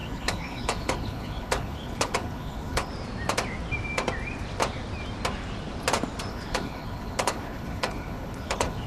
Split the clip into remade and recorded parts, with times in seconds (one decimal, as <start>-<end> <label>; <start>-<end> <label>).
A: 0.0-2.9 remade; 2.9-6.3 recorded; 6.3-8.9 remade